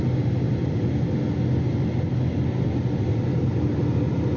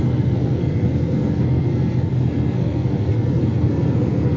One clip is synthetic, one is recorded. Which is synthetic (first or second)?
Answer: second